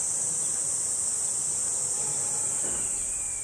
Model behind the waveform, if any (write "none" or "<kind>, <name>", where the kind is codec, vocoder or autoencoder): none